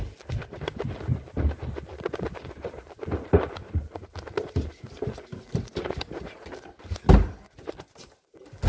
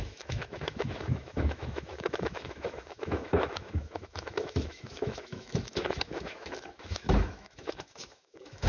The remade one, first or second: second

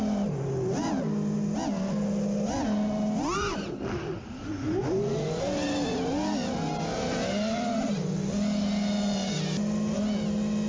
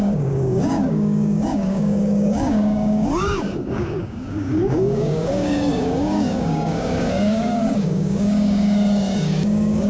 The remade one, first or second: second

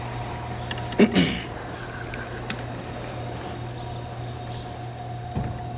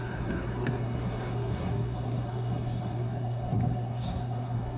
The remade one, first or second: second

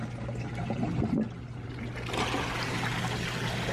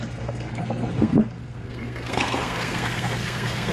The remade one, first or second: second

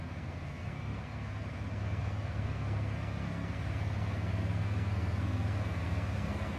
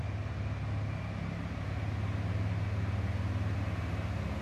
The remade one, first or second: first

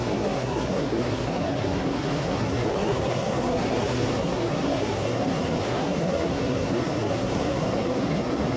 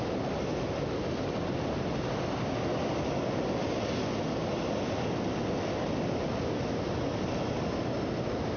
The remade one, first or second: first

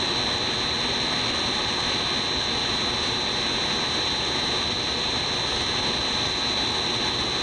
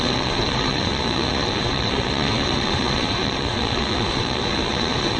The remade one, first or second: second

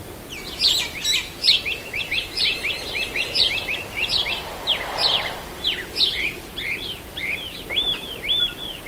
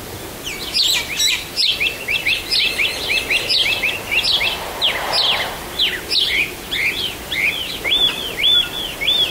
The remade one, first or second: first